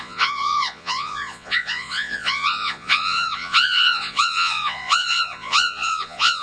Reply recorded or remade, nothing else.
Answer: remade